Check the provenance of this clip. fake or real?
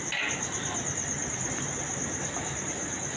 real